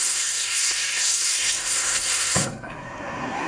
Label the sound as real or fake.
fake